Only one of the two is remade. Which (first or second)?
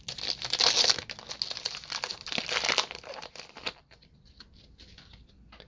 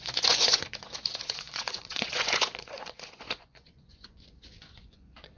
second